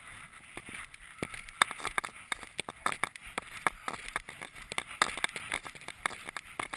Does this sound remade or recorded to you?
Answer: recorded